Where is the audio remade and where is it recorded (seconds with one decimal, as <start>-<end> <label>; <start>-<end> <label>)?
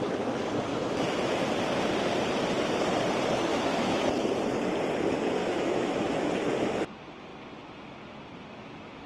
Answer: 0.0-0.7 recorded; 0.7-1.4 remade; 1.4-3.5 recorded; 3.5-4.1 remade; 4.1-5.4 recorded; 5.4-6.3 remade; 6.3-9.1 recorded